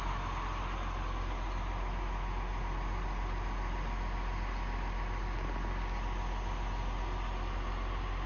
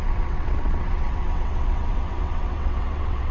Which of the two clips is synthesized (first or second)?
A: second